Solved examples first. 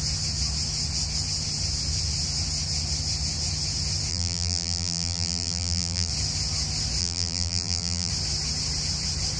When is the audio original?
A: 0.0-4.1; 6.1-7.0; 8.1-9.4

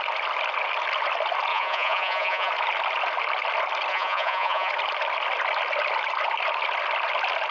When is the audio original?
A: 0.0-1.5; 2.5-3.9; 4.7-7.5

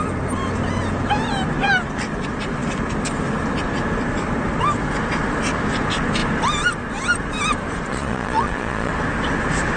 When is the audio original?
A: 0.0-7.9; 8.9-9.8